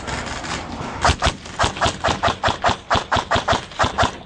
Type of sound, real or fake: real